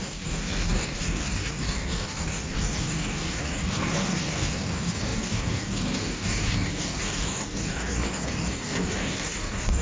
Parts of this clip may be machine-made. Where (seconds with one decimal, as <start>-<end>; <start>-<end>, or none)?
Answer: 0.0-9.8